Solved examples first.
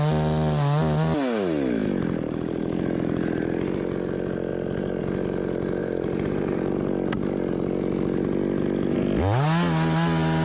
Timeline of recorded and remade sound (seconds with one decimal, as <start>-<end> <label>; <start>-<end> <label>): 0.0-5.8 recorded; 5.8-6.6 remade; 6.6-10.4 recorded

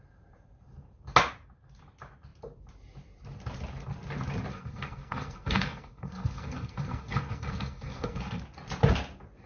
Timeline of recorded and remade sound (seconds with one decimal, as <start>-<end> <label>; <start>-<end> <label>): 0.0-4.5 recorded; 4.5-8.4 remade; 8.4-9.5 recorded

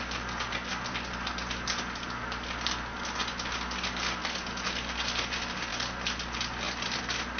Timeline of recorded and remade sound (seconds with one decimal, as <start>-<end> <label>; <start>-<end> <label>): 0.0-7.4 recorded

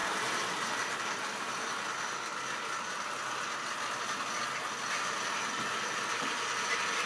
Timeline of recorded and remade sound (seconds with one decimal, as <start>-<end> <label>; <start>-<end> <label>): 0.0-7.1 recorded

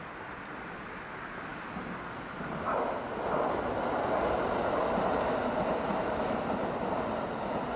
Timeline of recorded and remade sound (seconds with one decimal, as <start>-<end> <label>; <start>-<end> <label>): 0.0-7.8 recorded

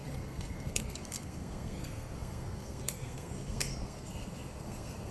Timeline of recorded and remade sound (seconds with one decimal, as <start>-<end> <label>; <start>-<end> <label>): 0.0-5.1 remade